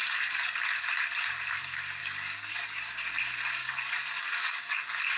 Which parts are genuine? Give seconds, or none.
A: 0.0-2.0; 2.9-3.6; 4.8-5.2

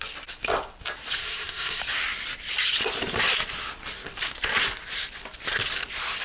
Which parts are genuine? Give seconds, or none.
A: 0.0-1.2; 1.8-6.2

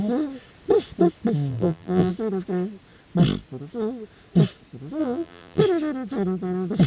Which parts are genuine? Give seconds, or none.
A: 0.0-1.5; 2.1-5.0; 5.6-6.9

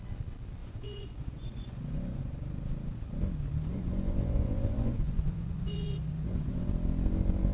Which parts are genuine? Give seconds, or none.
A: 0.0-0.6; 2.2-3.7; 6.7-7.5

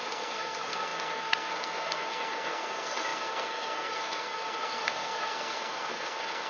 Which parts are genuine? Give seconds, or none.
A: none